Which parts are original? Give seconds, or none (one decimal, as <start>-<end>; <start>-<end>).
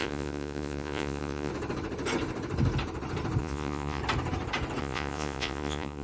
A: 1.5-3.4; 4.0-4.8